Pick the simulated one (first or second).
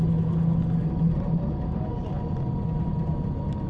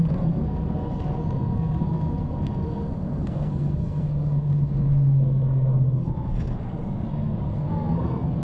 second